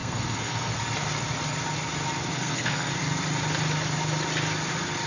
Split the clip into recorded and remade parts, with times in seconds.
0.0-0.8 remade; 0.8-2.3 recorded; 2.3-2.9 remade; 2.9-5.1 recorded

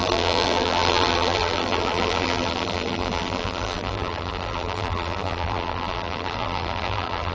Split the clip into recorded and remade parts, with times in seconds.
0.0-7.3 remade

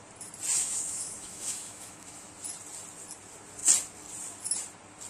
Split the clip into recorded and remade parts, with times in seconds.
0.0-0.6 recorded; 0.6-2.3 remade; 2.3-5.1 recorded

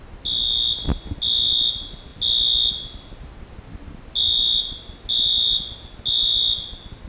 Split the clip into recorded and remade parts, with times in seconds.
0.0-7.1 recorded